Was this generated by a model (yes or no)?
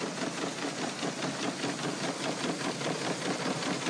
no